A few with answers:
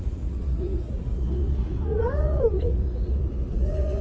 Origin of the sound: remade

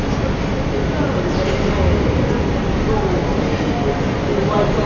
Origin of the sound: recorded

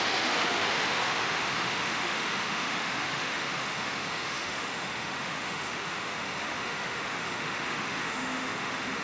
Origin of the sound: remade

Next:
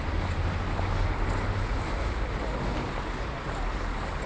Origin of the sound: recorded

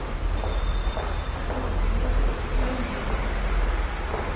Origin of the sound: recorded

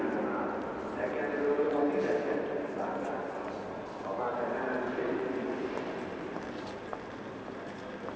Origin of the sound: recorded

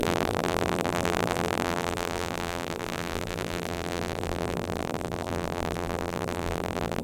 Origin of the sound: remade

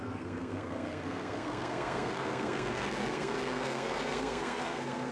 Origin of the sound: remade